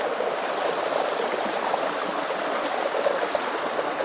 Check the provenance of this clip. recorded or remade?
recorded